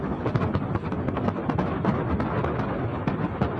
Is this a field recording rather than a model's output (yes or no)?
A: yes